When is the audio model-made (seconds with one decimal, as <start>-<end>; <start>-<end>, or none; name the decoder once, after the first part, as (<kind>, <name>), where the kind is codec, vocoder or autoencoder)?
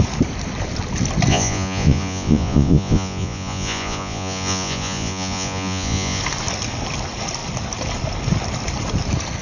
1.3-6.2 (vocoder, Vocos)